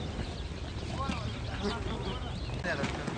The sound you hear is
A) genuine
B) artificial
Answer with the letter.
A